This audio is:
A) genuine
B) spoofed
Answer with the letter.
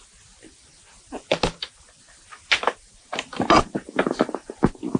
A